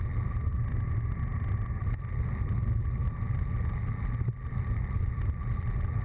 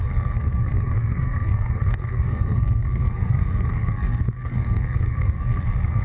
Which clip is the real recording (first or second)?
first